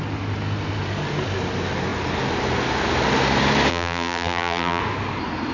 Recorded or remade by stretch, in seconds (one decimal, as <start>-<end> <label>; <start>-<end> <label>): 0.0-3.7 recorded; 3.7-4.8 remade; 4.8-5.5 recorded

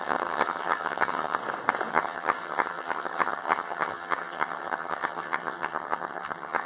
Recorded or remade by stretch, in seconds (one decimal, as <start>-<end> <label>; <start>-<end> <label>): 0.0-1.4 remade; 1.4-1.9 recorded; 1.9-6.7 remade

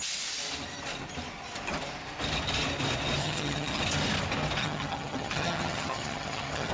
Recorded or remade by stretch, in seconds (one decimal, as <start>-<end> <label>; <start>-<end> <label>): 0.0-3.2 recorded; 3.2-3.8 remade; 3.8-4.6 recorded; 4.6-6.7 remade

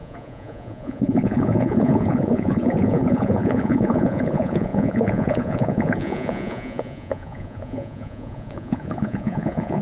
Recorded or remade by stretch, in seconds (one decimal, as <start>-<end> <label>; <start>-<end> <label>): 0.0-9.8 remade

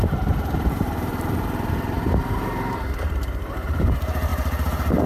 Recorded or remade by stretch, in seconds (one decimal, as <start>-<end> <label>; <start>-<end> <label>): 0.0-1.1 remade; 1.1-1.9 recorded; 1.9-5.1 remade

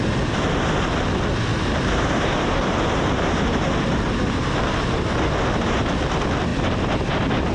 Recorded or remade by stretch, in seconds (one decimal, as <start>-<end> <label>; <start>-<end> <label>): 0.0-1.5 recorded; 1.5-5.0 remade; 5.0-7.5 recorded